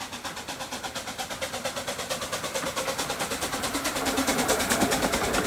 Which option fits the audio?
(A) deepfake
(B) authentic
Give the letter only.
A